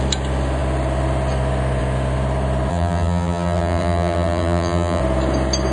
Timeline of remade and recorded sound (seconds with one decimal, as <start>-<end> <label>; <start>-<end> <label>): 0.0-2.7 recorded; 2.7-5.0 remade; 5.0-5.7 recorded